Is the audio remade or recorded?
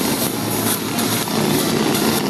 recorded